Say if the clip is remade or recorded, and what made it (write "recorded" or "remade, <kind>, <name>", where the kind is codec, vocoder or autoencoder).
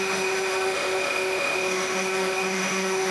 remade, autoencoder, DAC-VAE